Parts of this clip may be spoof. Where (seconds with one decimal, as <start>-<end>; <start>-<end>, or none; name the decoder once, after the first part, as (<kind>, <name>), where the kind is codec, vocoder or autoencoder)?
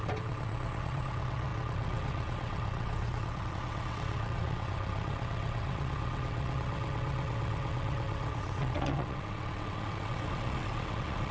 0.0-11.3 (vocoder, WaveNeXt)